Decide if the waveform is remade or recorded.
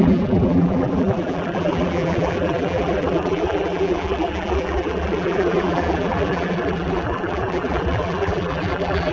remade